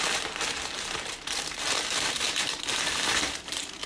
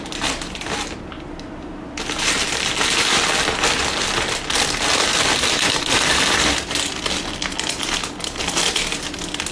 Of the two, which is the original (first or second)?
second